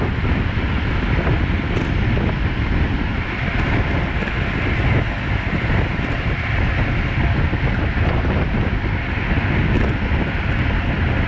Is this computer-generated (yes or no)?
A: no